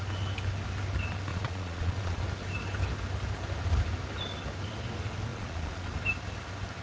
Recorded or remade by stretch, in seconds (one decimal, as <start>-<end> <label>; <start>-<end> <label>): 0.0-1.3 recorded; 1.3-2.2 remade; 2.2-5.3 recorded; 5.3-6.0 remade; 6.0-6.8 recorded